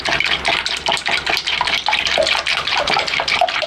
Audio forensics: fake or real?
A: real